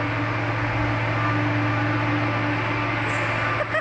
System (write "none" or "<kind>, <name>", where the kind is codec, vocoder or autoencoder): none